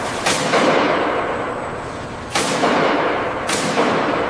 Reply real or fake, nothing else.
real